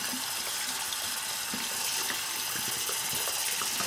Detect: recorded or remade recorded